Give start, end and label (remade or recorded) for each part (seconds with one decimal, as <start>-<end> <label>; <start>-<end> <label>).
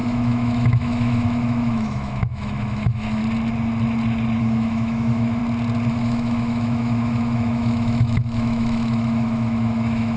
0.0-3.2 remade; 3.2-4.4 recorded; 4.4-5.4 remade; 5.4-5.9 recorded; 5.9-10.2 remade